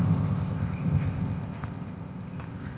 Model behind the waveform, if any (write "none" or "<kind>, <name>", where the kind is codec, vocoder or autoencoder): codec, ZipCodec